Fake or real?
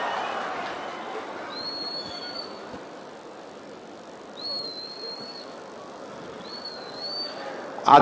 real